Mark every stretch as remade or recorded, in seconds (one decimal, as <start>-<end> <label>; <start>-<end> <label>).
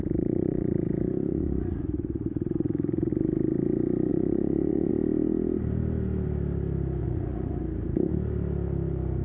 0.0-0.9 remade; 0.9-1.3 recorded; 1.3-3.1 remade; 3.1-4.1 recorded; 4.1-4.9 remade; 4.9-7.0 recorded; 7.0-7.6 remade; 7.6-9.2 recorded